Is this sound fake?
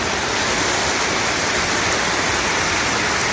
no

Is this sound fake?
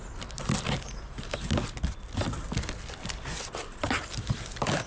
no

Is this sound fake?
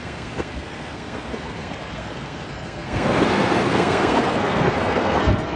yes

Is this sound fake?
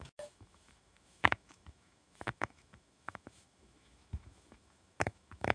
yes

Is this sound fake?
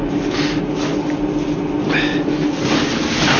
no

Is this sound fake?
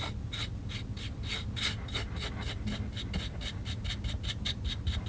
no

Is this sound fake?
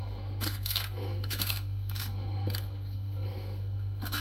yes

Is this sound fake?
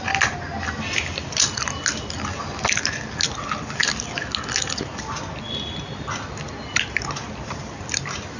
no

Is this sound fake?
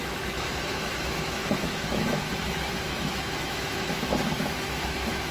yes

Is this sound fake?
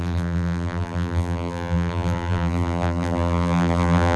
yes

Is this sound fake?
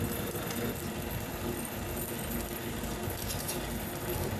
no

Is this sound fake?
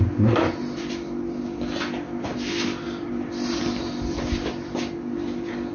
no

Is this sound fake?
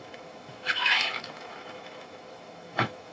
yes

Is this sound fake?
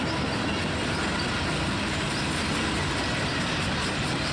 no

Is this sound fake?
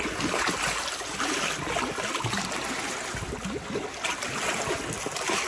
no